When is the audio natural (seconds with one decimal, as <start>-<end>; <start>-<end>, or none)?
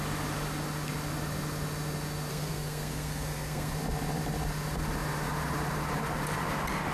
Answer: 0.0-2.3; 3.7-6.9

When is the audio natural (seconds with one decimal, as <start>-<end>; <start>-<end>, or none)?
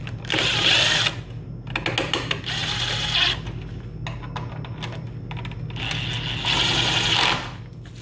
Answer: 0.0-8.0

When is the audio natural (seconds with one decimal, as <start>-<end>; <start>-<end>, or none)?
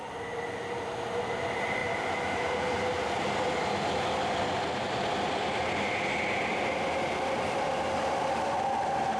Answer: 0.0-9.2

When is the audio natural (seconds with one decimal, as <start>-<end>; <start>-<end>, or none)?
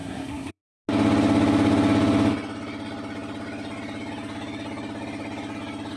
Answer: 0.6-6.0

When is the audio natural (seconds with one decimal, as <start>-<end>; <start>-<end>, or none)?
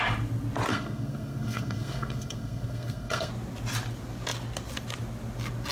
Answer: 0.0-0.7; 3.3-5.7